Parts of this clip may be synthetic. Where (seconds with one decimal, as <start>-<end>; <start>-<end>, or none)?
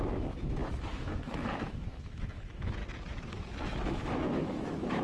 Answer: 0.0-2.8; 3.9-5.0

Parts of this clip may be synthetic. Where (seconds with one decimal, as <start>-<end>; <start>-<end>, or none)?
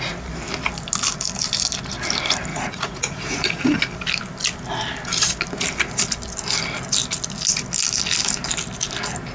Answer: 2.5-3.8